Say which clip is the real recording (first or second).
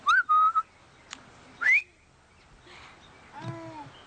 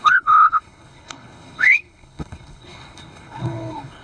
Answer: first